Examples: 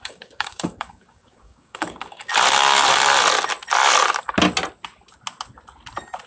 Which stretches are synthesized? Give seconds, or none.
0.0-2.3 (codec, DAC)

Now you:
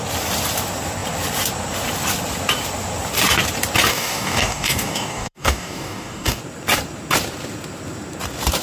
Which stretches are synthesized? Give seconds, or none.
3.9-6.4 (codec, DAC)

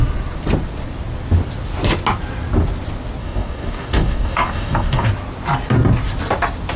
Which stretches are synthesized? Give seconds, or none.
3.2-5.1 (codec, DAC)

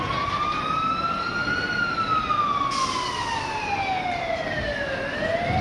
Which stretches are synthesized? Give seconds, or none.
none

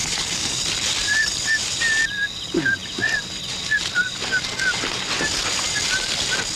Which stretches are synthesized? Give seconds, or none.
0.0-0.6 (codec, DAC)

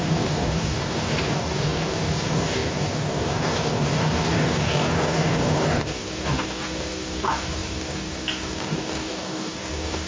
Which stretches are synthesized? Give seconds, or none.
0.0-10.1 (codec, DAC)

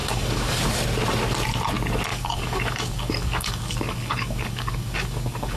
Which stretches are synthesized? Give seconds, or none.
0.0-0.6 (codec, DAC); 2.1-5.6

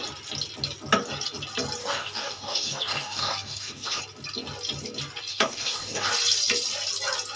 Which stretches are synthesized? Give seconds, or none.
1.8-4.0 (codec, DAC); 5.3-6.1